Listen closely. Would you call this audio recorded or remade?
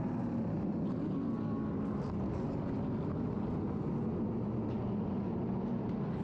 recorded